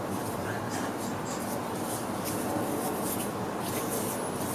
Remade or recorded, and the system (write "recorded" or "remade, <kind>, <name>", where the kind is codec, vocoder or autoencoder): recorded